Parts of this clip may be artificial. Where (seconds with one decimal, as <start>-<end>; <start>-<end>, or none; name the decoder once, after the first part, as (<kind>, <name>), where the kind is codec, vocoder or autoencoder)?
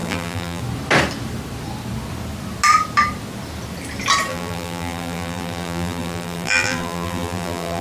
0.0-0.6 (vocoder, BigVGAN v2); 4.3-7.8